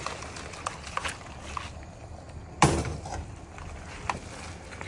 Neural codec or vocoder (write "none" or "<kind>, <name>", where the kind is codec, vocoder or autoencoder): none